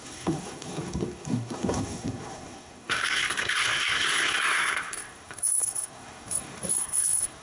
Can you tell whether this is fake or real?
fake